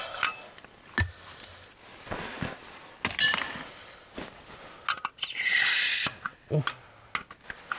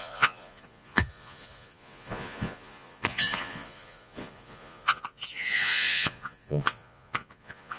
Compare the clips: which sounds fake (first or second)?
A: second